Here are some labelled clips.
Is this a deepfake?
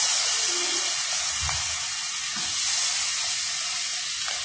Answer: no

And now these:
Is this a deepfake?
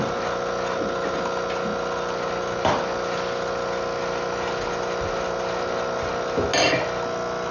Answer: no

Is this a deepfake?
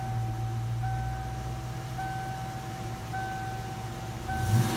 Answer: no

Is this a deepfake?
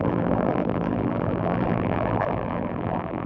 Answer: yes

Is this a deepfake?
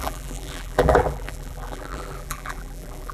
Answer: yes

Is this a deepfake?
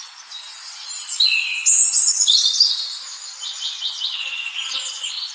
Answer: no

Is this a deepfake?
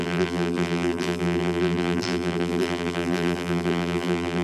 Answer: yes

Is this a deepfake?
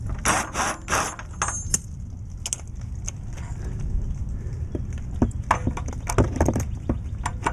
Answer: no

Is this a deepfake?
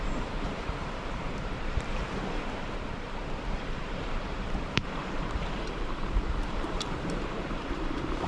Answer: yes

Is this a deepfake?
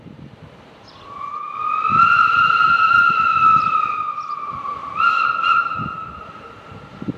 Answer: yes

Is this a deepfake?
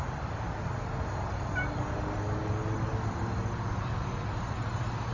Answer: no